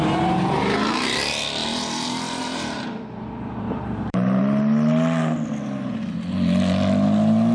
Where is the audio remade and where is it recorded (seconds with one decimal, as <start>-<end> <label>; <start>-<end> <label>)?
0.0-1.6 recorded; 1.6-4.4 remade; 4.4-7.5 recorded